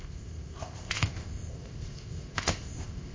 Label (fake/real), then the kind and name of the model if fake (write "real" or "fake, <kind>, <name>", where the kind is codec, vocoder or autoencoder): fake, codec, ZipCodec